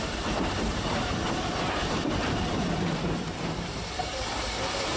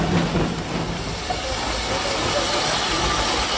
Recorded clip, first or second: second